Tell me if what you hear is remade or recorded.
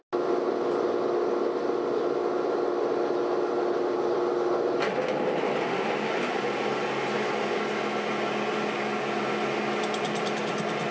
recorded